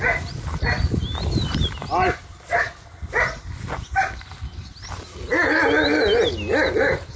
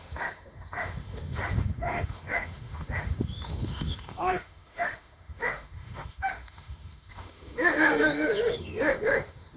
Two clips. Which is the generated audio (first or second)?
second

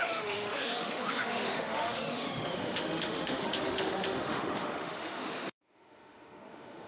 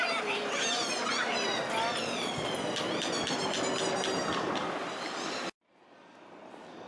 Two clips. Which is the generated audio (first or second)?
first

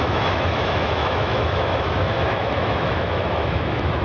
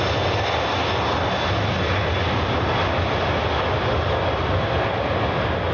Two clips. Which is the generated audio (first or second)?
first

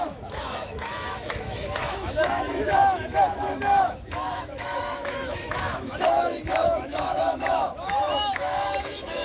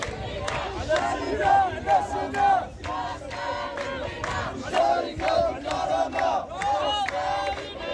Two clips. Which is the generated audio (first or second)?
first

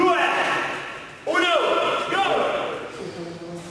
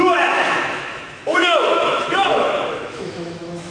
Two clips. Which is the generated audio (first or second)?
second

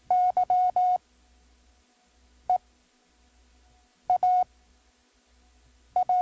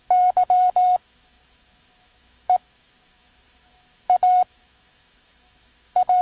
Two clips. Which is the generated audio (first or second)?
second